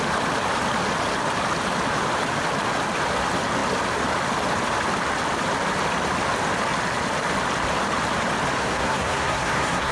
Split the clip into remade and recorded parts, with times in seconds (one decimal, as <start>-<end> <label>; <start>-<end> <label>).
0.0-8.6 recorded; 8.6-9.9 remade